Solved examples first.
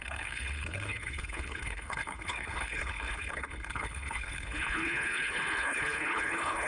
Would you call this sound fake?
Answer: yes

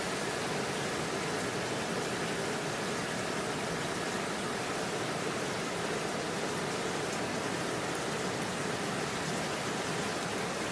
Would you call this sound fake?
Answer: no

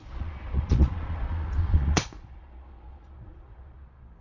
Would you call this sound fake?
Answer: yes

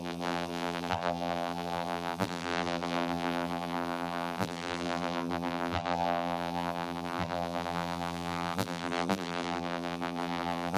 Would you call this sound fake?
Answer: yes